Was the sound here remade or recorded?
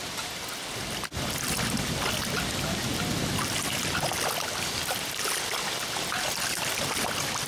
recorded